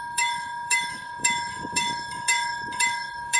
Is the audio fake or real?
fake